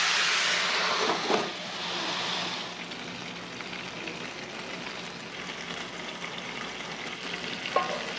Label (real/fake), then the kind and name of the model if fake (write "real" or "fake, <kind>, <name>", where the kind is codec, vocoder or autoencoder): real